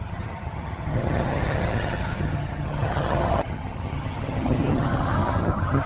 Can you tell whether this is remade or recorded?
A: remade